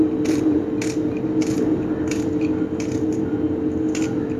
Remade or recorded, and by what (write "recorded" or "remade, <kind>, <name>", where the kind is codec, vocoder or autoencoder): recorded